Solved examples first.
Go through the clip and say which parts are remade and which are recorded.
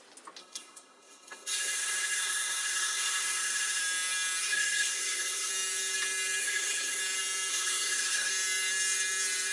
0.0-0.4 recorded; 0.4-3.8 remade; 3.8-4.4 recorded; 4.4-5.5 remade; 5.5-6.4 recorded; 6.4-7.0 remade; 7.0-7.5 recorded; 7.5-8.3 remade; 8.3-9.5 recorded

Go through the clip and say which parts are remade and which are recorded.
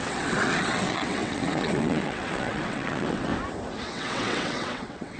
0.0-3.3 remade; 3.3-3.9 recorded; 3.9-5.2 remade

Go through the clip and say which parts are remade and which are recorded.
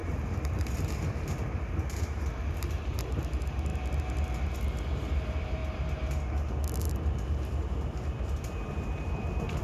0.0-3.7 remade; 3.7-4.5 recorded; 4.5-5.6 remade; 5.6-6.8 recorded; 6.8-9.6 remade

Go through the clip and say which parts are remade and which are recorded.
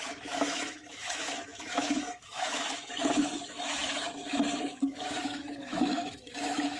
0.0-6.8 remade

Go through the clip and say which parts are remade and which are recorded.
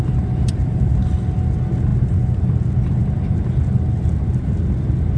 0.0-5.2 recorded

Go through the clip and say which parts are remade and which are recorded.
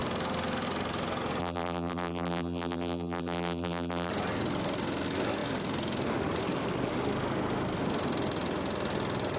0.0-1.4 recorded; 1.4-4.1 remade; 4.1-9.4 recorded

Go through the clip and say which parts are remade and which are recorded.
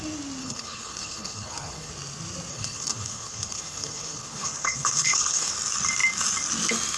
0.0-0.4 recorded; 0.4-1.9 remade; 1.9-2.5 recorded; 2.5-5.5 remade; 5.5-7.0 recorded